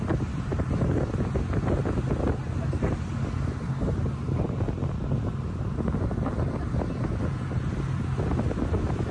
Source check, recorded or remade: recorded